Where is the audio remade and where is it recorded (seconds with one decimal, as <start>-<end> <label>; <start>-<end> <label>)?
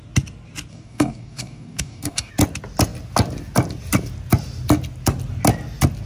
0.0-0.7 recorded; 0.7-2.3 remade; 2.3-6.1 recorded